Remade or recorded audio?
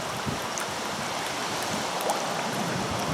recorded